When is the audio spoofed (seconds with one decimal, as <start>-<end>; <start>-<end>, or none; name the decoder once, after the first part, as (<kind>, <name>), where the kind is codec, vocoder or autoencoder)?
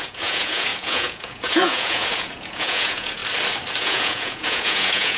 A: 0.0-3.2 (vocoder, Vocos); 3.8-5.2